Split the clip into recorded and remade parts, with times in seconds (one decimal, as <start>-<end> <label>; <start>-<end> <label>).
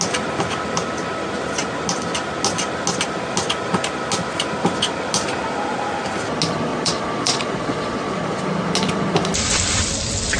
0.0-6.7 recorded; 6.7-8.4 remade; 8.4-10.4 recorded